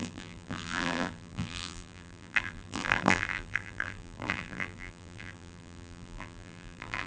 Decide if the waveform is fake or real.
fake